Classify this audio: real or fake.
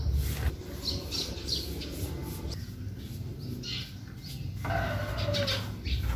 real